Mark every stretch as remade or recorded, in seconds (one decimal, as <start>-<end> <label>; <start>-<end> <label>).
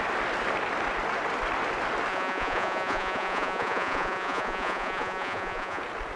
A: 0.0-2.1 recorded; 2.1-5.8 remade; 5.8-6.2 recorded